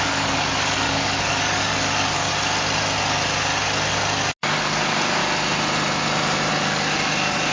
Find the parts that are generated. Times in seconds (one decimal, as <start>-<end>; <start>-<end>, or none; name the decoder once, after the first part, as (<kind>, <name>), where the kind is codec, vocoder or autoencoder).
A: 0.0-2.3 (codec, DAC); 4.4-5.2; 6.5-7.5